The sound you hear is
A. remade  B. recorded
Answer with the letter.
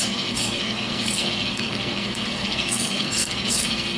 A